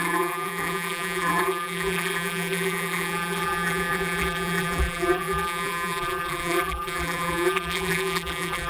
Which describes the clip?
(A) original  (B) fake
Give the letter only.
B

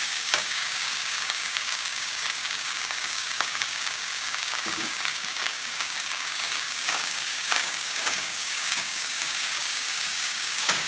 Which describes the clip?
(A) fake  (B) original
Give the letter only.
A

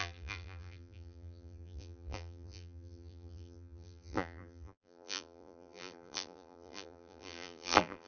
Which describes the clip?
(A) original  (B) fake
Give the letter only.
B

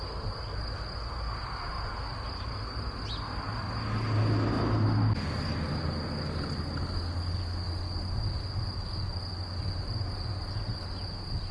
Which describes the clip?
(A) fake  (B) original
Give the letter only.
B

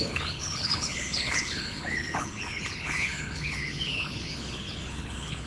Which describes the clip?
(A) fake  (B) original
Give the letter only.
A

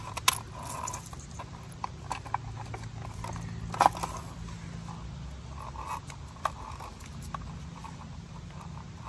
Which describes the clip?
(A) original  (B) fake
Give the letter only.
A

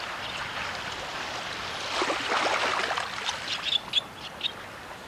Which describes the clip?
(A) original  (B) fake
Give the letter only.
A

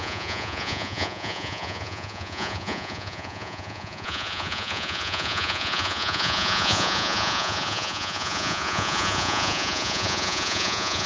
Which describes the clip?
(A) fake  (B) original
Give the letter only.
A